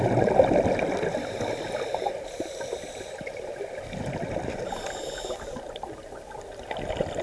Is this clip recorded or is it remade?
recorded